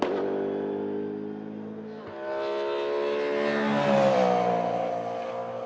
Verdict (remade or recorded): recorded